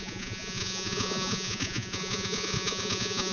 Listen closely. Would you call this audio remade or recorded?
remade